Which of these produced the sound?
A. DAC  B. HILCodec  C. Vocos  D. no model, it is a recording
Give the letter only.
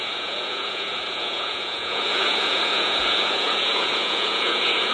C